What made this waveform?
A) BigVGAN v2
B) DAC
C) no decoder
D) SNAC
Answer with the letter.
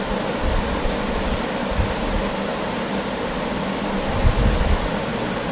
C